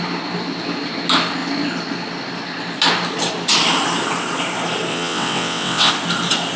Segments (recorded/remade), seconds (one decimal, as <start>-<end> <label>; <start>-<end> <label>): 0.0-4.9 recorded; 4.9-5.9 remade; 5.9-6.6 recorded